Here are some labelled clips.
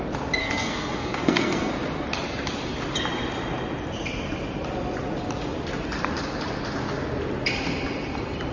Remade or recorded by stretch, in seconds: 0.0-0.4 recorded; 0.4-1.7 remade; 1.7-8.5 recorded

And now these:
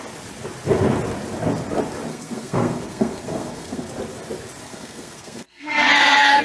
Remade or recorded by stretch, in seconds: 0.0-2.1 recorded; 2.1-3.9 remade; 3.9-4.7 recorded; 4.7-6.4 remade

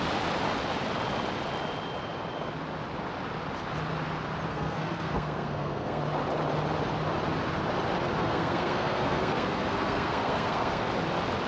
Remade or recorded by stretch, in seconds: 0.0-4.5 recorded; 4.5-6.0 remade; 6.0-8.2 recorded; 8.2-10.9 remade; 10.9-11.5 recorded

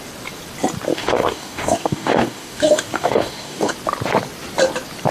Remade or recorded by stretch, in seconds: 0.0-0.9 recorded; 0.9-3.7 remade; 3.7-5.1 recorded

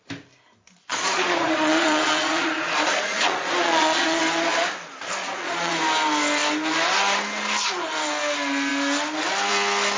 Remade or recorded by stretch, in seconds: 0.0-0.9 recorded; 0.9-4.2 remade; 4.2-5.2 recorded; 5.2-5.7 remade; 5.7-10.0 recorded

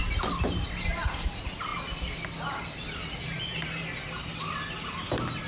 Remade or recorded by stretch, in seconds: 0.0-5.5 recorded

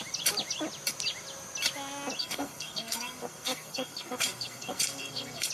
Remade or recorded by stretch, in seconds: 0.0-2.2 recorded; 2.2-5.5 remade

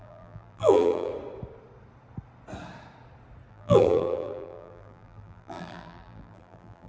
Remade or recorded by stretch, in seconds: 0.0-1.1 remade; 1.1-3.5 recorded; 3.5-6.9 remade